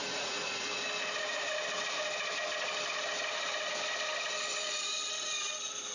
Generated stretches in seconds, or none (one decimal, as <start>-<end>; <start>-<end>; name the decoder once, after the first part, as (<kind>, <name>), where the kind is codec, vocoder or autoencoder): 0.0-0.8 (vocoder, Vocos)